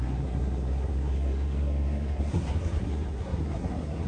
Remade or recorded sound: remade